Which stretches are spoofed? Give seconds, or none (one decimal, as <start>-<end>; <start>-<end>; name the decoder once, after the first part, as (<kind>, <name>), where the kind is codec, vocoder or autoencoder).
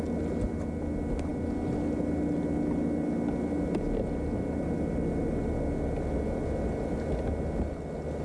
none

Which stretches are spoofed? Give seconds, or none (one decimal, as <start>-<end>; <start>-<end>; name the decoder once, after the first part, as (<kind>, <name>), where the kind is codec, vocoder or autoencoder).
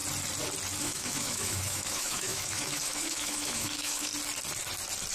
0.8-4.1 (autoencoder, DAC-VAE)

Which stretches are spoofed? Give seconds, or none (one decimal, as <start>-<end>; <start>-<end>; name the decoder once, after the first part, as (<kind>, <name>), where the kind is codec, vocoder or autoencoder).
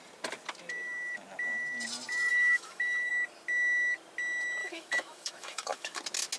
2.3-3.1 (autoencoder, DAC-VAE); 4.6-6.0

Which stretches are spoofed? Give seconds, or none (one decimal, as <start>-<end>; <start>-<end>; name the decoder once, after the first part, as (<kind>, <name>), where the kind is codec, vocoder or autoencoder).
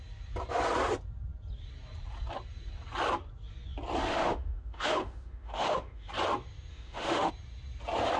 4.1-6.1 (autoencoder, DAC-VAE); 6.7-7.3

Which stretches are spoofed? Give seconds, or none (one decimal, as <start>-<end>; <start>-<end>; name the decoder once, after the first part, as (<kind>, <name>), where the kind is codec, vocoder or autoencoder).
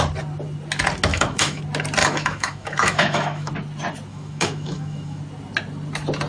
1.1-1.6 (autoencoder, DAC-VAE); 2.0-3.5; 4.1-5.2